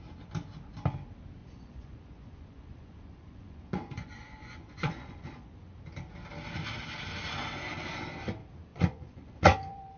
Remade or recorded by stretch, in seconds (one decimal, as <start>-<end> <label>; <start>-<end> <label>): 0.0-1.4 recorded; 1.4-5.7 remade; 5.7-8.7 recorded; 8.7-10.0 remade